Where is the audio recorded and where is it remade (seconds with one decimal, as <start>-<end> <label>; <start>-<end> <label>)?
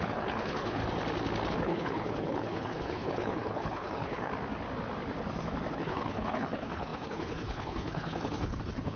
0.0-0.8 remade; 0.8-1.5 recorded; 1.5-4.3 remade; 4.3-5.7 recorded; 5.7-9.0 remade